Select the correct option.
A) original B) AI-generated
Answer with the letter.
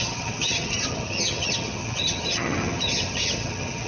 B